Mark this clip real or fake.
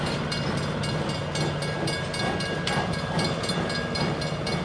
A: real